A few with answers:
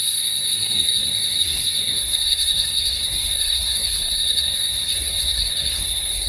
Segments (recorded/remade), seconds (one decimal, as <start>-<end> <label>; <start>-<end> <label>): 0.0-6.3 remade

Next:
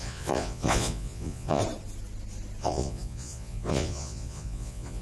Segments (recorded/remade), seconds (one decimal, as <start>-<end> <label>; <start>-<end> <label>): 0.0-1.6 remade; 1.6-2.6 recorded; 2.6-5.0 remade

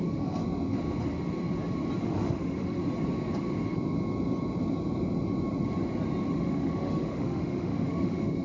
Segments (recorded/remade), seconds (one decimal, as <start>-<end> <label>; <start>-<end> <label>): 0.0-0.4 remade; 0.4-2.0 recorded; 2.0-2.8 remade; 2.8-6.3 recorded; 6.3-8.4 remade

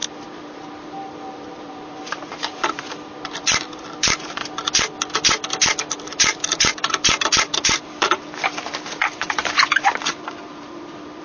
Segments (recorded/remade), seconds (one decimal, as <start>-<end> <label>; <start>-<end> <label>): 0.0-4.4 remade; 4.4-5.9 recorded; 5.9-11.2 remade

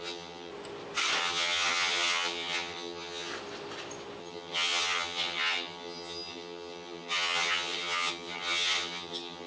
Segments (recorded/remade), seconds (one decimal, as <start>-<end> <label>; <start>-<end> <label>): 0.0-0.5 remade; 0.5-1.2 recorded; 1.2-3.3 remade; 3.3-4.2 recorded; 4.2-9.5 remade